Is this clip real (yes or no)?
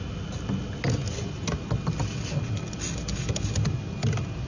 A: yes